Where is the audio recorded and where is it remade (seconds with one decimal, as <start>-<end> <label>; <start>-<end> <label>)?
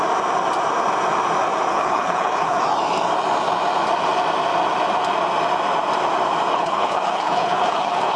0.0-1.7 recorded; 1.7-2.6 remade; 2.6-6.5 recorded; 6.5-8.2 remade